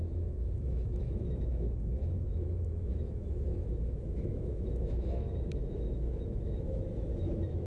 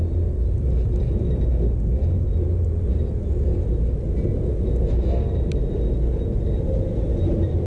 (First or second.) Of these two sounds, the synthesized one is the first